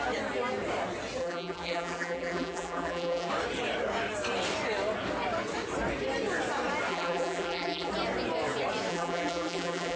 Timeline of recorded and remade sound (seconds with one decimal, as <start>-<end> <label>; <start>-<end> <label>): 0.0-1.2 recorded; 1.2-3.3 remade; 3.3-6.9 recorded; 6.9-7.9 remade; 7.9-8.9 recorded; 8.9-10.0 remade